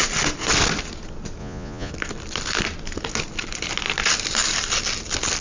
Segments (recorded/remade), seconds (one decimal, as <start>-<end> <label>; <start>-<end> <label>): 0.0-1.4 recorded; 1.4-1.9 remade; 1.9-5.4 recorded